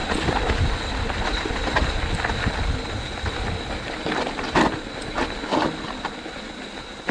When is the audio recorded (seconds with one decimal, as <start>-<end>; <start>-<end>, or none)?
0.0-7.1